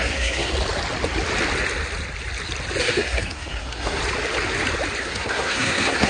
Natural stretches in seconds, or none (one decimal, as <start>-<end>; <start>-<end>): 0.5-2.8; 4.0-5.0